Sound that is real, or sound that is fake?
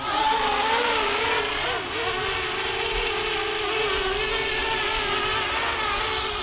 real